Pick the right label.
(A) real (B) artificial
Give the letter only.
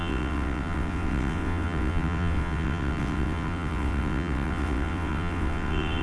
B